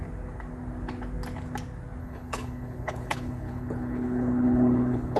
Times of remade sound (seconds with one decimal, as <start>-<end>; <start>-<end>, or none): 2.0-5.2